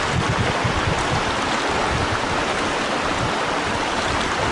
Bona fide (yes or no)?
yes